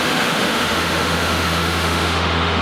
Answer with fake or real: fake